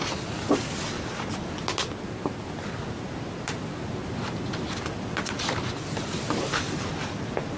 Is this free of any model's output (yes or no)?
yes